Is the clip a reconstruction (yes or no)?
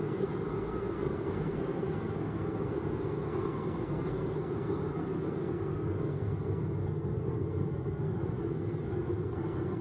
yes